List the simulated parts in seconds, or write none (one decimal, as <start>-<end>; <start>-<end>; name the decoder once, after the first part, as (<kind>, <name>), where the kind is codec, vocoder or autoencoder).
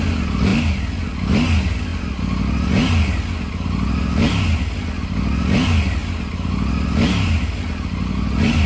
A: none